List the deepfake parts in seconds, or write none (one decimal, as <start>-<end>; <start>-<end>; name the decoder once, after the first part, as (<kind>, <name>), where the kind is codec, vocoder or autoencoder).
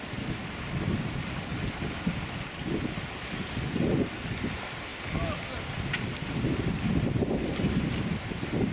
none